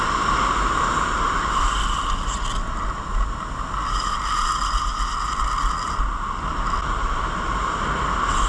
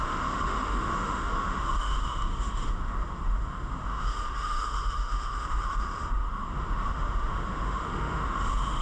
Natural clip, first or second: first